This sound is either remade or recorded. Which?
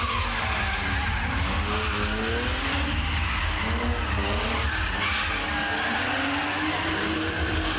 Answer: recorded